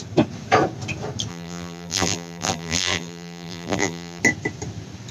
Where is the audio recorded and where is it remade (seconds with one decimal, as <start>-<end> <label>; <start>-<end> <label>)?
0.0-1.3 recorded; 1.3-4.2 remade; 4.2-5.1 recorded